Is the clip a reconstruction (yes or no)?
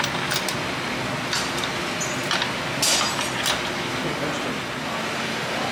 no